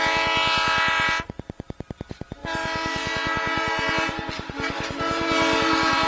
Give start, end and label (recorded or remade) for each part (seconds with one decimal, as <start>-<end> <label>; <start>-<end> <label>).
0.0-6.1 recorded